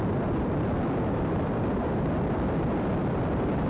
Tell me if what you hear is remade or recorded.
remade